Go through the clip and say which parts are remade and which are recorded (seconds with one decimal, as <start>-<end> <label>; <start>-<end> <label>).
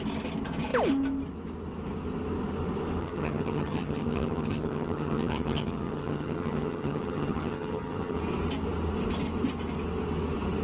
0.0-3.0 recorded; 3.0-8.2 remade; 8.2-10.6 recorded